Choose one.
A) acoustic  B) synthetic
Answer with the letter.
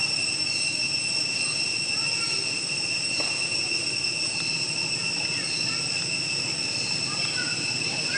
A